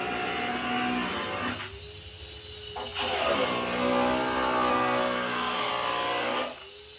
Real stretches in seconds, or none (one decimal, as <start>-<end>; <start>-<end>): 0.0-4.7; 5.7-7.0